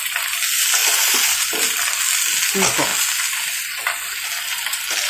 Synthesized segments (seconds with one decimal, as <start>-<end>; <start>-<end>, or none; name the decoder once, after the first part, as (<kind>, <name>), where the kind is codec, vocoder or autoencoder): none

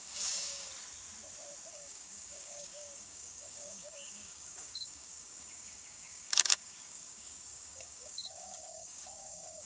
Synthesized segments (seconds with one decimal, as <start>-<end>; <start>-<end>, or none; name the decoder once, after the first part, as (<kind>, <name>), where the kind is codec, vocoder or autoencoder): 0.0-0.7 (codec, DAC); 1.7-9.7

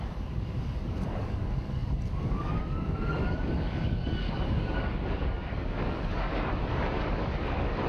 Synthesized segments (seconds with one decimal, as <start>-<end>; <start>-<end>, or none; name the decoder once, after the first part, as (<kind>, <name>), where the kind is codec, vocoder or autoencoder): 0.0-7.9 (codec, DAC)

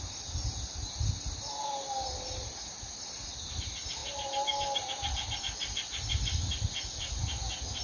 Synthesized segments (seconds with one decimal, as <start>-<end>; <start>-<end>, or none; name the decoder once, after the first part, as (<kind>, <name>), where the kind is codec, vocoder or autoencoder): none